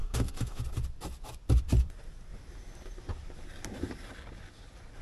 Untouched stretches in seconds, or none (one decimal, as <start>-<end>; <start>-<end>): 0.6-5.0